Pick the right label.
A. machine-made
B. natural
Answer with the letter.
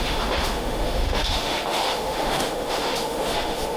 A